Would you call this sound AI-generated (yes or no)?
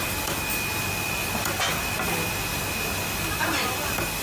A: no